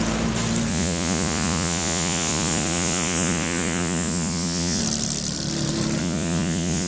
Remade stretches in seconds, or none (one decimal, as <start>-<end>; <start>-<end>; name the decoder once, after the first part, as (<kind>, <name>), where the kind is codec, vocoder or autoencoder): 0.7-4.8 (vocoder, Vocos); 6.0-6.9